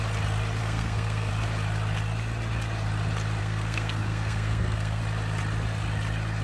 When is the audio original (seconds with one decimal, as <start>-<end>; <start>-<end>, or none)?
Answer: 0.0-0.6; 1.3-3.4; 5.0-6.4